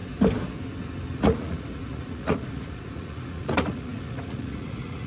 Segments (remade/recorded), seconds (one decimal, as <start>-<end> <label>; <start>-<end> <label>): 0.0-1.2 recorded; 1.2-5.1 remade